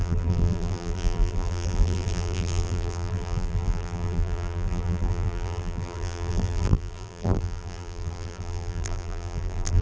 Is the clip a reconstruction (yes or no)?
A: yes